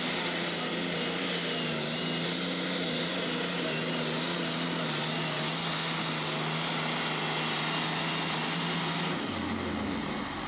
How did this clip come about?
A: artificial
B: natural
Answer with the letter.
B